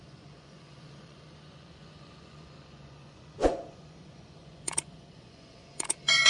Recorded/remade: remade